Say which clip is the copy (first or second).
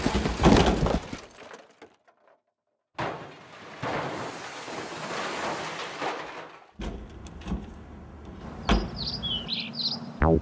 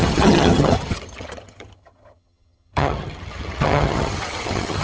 second